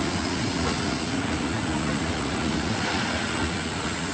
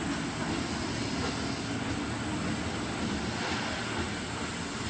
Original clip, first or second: second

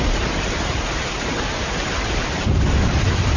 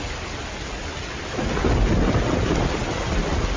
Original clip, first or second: second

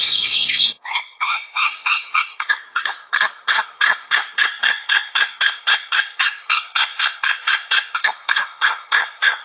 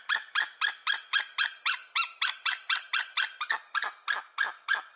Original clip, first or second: second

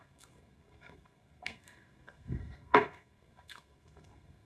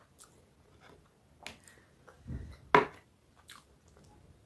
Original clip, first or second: second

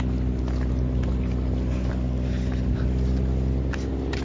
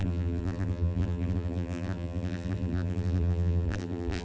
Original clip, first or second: first